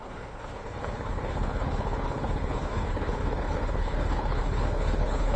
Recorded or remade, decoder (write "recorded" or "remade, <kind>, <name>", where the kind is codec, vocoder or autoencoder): remade, codec, HILCodec